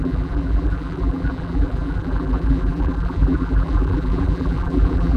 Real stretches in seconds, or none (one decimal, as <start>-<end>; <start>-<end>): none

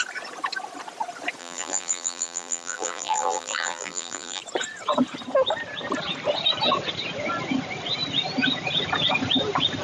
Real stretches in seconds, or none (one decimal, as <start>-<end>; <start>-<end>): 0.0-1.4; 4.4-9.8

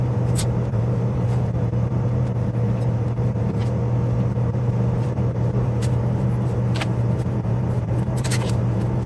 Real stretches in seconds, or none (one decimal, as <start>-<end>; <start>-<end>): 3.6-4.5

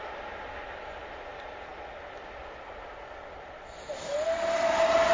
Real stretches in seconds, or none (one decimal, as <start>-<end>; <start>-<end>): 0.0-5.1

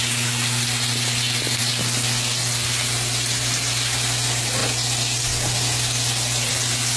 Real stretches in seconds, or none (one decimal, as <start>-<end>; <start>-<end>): 0.0-7.0